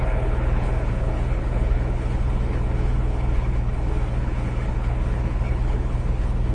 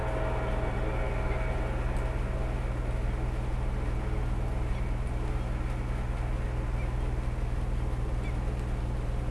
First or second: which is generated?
first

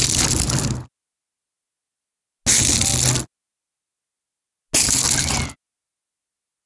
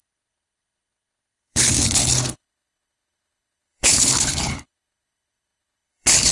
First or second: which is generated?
second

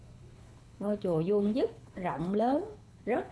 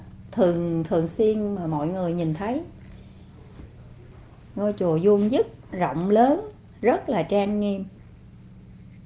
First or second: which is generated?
first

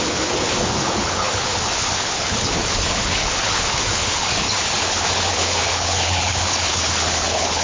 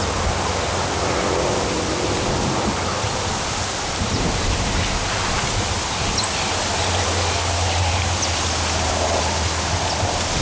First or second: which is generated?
first